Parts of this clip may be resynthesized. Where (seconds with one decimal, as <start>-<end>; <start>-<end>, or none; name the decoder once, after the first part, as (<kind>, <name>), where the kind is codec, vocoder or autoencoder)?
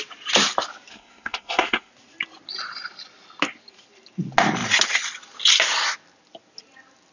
0.9-1.9 (codec, SNAC)